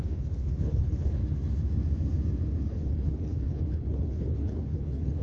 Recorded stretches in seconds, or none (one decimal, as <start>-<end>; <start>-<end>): 1.2-2.7